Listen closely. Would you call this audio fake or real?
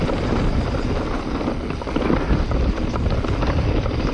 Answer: real